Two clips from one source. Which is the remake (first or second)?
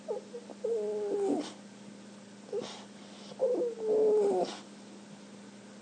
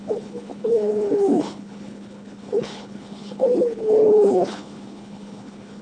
second